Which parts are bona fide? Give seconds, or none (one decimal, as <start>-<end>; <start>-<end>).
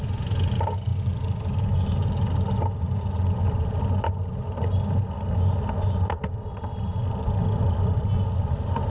0.0-8.9